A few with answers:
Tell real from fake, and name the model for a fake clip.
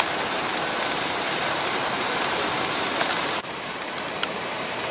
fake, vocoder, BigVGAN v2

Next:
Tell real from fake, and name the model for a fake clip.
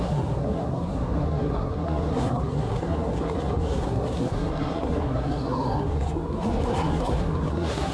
fake, codec, SNAC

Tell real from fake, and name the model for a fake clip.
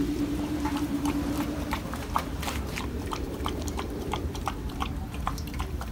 fake, vocoder, BigVGAN v2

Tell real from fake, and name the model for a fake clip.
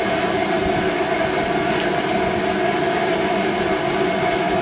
real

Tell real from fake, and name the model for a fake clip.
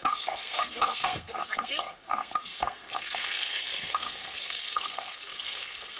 fake, codec, SNAC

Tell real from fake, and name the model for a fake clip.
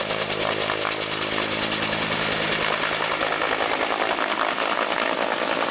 real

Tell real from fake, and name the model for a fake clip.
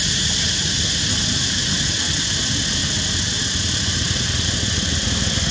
real